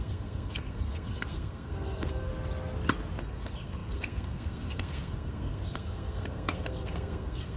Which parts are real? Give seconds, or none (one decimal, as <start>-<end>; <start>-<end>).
2.3-3.2

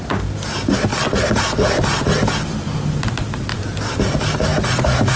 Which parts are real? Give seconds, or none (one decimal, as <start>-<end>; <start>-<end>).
0.0-5.2

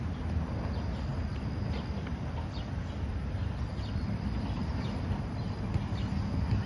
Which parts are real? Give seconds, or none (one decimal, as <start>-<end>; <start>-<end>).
0.0-6.7

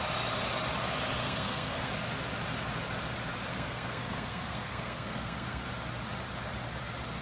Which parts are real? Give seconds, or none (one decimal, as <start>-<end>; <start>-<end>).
0.0-1.2; 1.9-3.5; 5.7-7.2